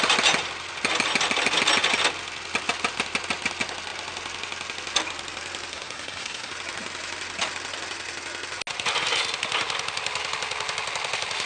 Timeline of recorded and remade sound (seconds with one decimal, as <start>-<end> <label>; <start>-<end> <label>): 0.0-5.7 recorded; 5.7-6.5 remade; 6.5-11.5 recorded